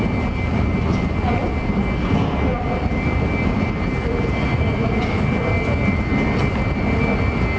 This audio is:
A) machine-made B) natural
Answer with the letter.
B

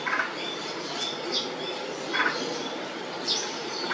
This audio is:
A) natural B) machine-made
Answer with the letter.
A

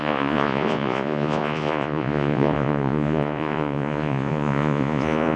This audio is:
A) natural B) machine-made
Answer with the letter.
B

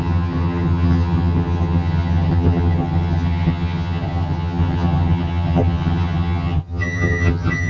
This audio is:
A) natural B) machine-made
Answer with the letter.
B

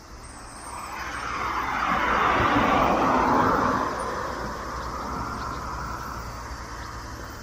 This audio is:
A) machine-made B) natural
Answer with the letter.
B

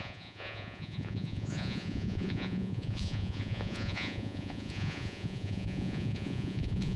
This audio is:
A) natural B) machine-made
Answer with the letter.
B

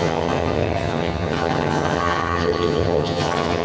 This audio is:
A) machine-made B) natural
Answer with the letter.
A